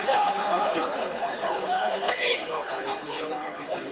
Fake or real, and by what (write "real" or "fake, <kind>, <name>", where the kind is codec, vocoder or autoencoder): fake, codec, HILCodec